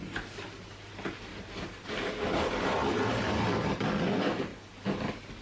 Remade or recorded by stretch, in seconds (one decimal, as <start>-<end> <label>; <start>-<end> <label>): 0.0-1.3 recorded; 1.3-3.9 remade; 3.9-5.4 recorded